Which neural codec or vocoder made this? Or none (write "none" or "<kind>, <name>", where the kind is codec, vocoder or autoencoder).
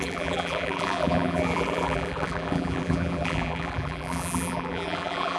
vocoder, BigVGAN v2